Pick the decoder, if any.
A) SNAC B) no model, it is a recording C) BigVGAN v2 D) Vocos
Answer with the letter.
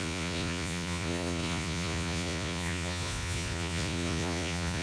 D